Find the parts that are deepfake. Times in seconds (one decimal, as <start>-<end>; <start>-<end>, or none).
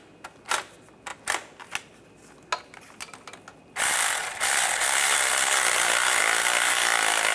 none